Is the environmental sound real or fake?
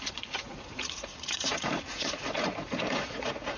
fake